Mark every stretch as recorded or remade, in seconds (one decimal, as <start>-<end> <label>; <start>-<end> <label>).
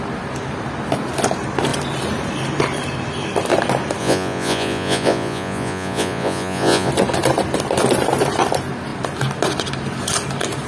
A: 0.0-4.0 recorded; 4.0-6.9 remade; 6.9-10.7 recorded